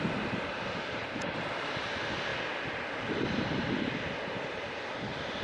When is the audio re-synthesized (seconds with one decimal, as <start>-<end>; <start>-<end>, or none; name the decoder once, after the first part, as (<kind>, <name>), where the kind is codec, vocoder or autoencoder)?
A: none